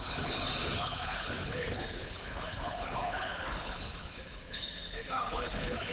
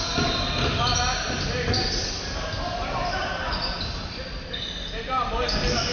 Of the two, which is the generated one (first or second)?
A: first